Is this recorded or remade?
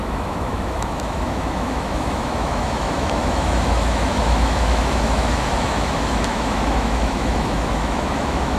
remade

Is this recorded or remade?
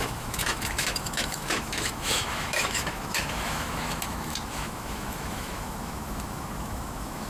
remade